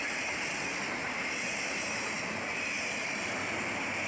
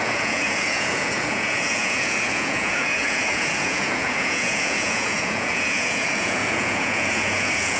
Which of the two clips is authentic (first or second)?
first